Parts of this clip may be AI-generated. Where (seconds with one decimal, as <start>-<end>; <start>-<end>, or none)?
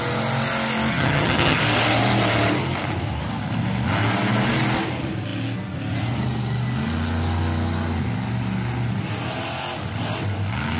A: 0.9-1.6